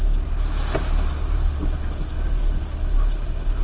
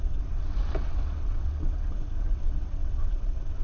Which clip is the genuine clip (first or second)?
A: first